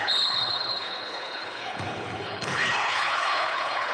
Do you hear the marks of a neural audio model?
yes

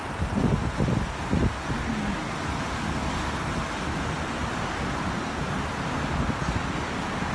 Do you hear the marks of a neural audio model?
no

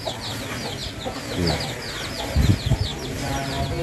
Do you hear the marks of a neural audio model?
no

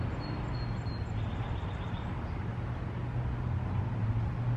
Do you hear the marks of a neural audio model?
no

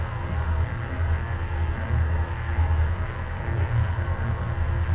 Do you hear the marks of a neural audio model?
yes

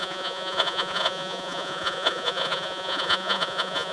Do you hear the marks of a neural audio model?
yes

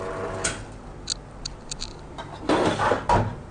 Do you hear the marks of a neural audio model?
no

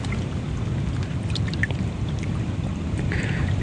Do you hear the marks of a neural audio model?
no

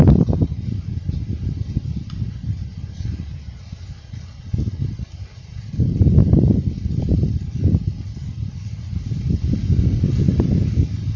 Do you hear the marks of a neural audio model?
no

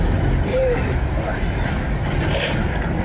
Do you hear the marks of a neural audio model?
yes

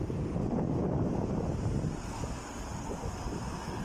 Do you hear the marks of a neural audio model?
no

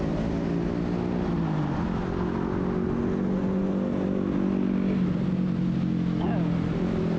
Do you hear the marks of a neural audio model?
no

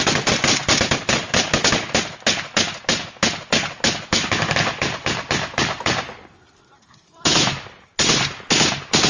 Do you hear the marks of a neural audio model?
no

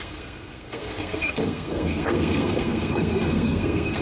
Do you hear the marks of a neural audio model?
yes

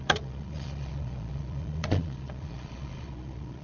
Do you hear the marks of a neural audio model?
yes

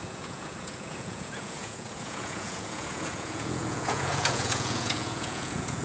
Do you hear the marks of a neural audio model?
yes